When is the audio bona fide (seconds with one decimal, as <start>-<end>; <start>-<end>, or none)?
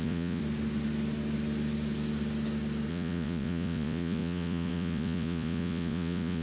0.4-2.9